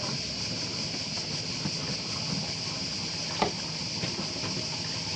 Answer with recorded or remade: recorded